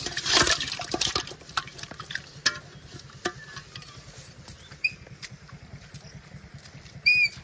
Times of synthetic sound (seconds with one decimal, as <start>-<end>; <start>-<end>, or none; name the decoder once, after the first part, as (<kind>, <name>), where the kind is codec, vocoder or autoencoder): 1.7-2.2 (vocoder, BigVGAN v2)